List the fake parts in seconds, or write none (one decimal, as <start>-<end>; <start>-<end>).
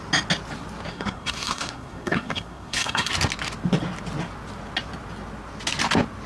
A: 0.9-3.1